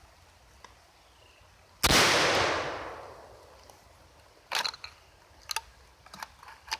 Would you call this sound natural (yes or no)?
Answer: yes